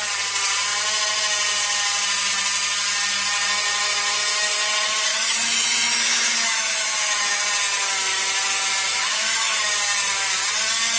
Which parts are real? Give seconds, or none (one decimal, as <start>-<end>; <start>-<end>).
0.0-5.1; 7.4-8.9; 9.6-11.0